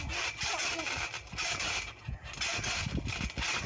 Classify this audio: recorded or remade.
recorded